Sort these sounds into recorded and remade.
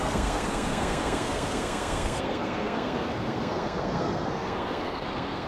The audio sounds remade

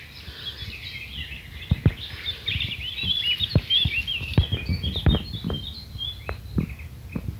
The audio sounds recorded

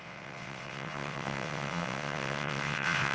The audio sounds remade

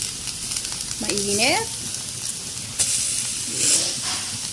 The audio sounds recorded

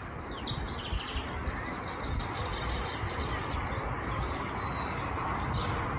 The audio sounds recorded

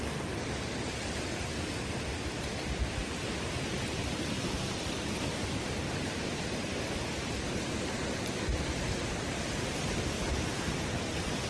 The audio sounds remade